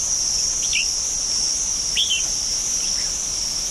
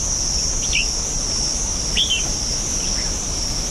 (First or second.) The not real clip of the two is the first